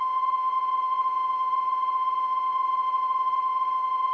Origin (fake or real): fake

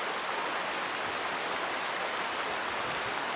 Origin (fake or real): real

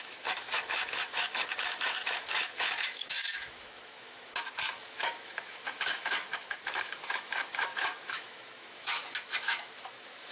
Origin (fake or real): fake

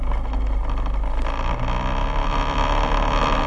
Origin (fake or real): real